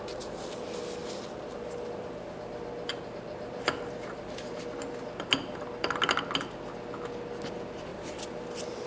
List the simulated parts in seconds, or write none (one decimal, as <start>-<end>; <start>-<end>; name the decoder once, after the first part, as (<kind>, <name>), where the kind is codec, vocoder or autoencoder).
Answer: 1.0-6.2 (vocoder, BigVGAN v2); 7.9-8.9